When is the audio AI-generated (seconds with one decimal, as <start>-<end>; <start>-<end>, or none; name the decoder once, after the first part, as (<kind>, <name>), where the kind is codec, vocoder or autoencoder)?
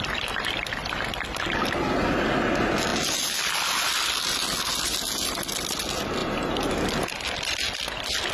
6.2-6.7 (vocoder, BigVGAN v2)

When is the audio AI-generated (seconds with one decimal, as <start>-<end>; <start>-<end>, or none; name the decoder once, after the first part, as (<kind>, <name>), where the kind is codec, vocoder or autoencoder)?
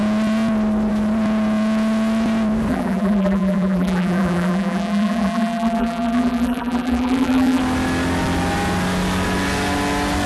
2.7-7.6 (vocoder, BigVGAN v2)